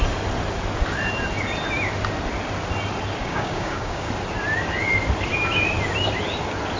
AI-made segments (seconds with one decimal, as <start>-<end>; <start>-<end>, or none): 3.2-4.1